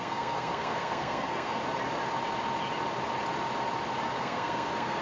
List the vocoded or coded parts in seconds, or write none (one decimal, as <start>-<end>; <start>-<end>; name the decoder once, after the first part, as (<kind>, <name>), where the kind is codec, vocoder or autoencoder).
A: 0.0-1.6 (codec, SNAC); 4.2-5.0